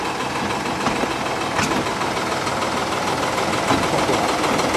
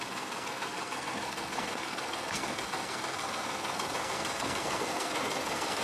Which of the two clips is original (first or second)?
first